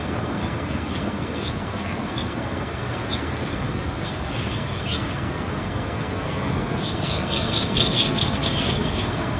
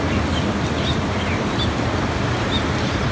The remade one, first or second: first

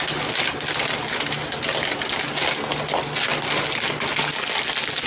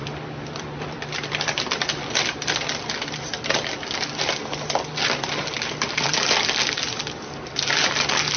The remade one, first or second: second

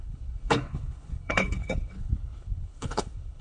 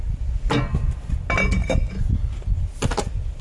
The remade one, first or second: first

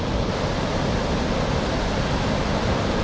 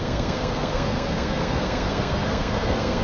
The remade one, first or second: second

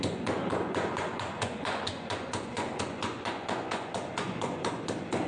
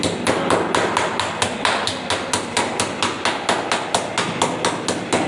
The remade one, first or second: first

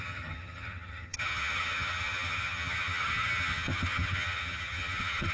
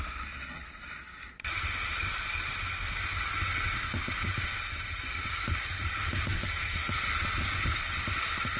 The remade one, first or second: first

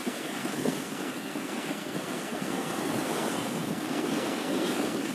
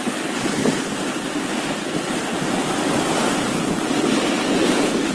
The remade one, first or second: first